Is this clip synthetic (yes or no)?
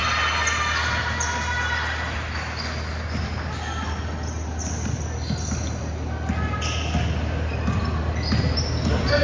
no